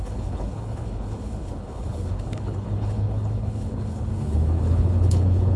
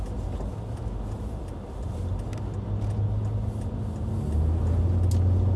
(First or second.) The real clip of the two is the second